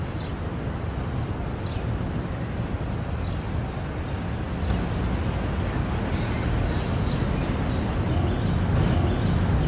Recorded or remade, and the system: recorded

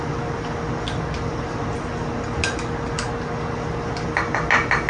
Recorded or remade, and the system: recorded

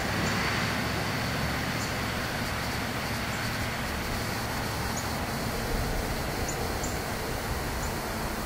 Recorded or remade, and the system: recorded